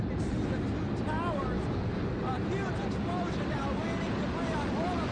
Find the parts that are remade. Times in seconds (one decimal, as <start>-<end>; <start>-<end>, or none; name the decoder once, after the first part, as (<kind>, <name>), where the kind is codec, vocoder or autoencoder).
none